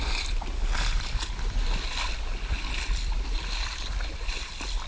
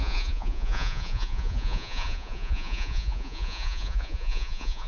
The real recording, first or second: first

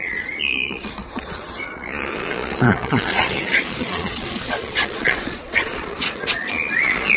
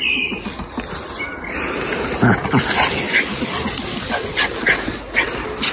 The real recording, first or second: second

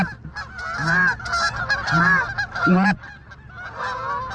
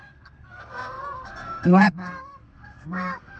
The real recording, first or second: first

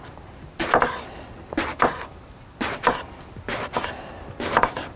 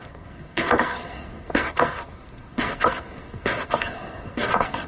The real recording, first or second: first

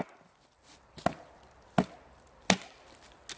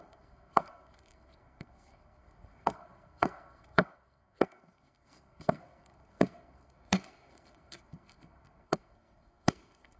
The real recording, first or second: first